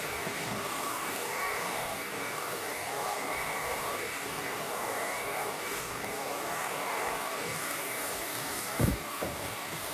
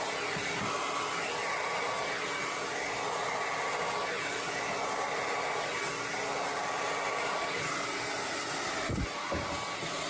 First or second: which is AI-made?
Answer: first